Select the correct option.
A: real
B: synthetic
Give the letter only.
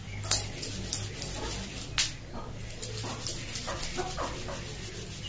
A